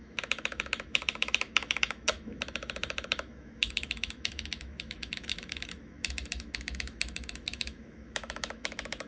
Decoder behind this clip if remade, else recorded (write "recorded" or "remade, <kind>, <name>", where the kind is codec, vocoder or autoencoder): remade, autoencoder, DAC-VAE